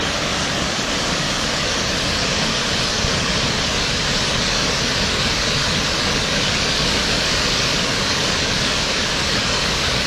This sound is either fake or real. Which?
fake